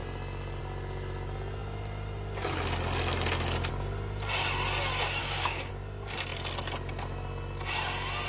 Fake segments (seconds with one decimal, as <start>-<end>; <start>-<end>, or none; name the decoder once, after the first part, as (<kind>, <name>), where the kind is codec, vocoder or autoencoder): 5.2-5.7 (codec, DAC)